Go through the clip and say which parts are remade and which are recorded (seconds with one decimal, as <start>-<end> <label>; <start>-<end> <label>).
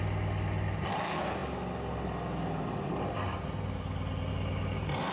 0.0-5.1 recorded